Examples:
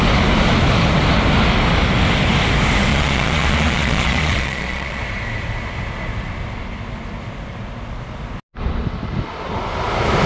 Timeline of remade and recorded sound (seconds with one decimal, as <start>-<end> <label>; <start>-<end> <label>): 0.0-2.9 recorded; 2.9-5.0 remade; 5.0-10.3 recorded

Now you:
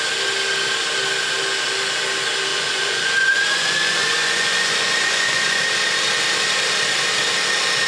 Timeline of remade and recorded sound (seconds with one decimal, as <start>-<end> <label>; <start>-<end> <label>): 0.0-2.5 recorded; 2.5-5.6 remade; 5.6-7.9 recorded

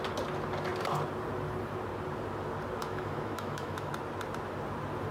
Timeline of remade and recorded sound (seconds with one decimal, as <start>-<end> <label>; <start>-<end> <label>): 0.0-2.8 recorded; 2.8-3.9 remade; 3.9-5.1 recorded